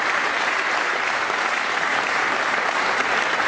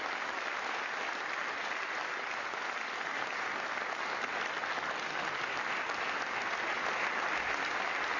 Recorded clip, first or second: second